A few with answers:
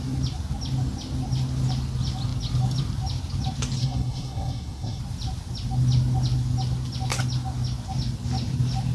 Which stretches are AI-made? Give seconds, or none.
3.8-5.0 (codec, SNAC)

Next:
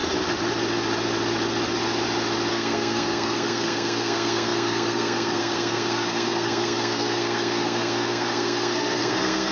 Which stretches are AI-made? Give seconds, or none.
2.5-9.5 (codec, SNAC)